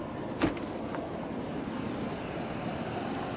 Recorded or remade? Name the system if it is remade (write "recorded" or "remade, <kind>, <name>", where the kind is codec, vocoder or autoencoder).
recorded